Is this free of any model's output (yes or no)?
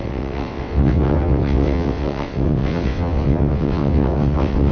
no